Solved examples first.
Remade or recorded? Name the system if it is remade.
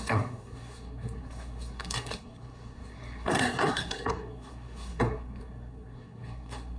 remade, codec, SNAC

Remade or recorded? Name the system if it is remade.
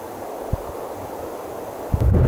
recorded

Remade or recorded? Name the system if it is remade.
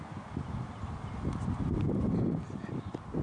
recorded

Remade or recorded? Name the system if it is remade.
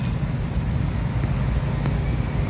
recorded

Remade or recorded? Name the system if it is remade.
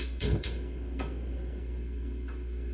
remade, codec, SNAC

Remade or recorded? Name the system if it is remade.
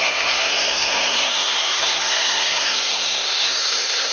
remade, codec, SNAC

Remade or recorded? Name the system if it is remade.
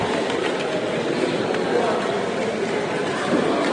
recorded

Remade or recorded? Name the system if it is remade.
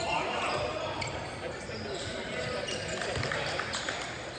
recorded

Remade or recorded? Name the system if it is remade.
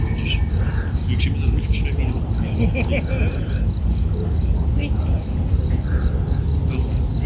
recorded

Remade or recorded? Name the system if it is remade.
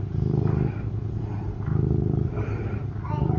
recorded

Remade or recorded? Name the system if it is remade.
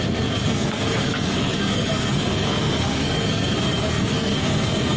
remade, codec, SNAC